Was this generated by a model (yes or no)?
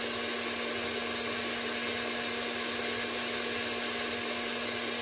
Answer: no